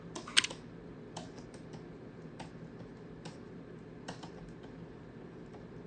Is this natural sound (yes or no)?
yes